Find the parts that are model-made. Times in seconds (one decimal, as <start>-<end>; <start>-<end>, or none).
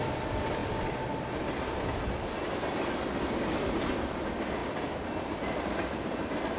none